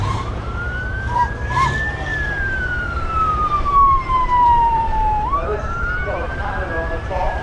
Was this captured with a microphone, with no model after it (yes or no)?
no